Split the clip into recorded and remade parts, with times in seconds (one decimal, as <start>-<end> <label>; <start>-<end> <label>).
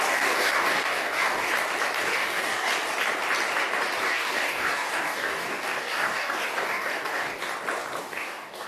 0.0-1.5 remade; 1.5-2.0 recorded; 2.0-2.7 remade; 2.7-4.0 recorded; 4.0-7.4 remade; 7.4-8.0 recorded; 8.0-8.7 remade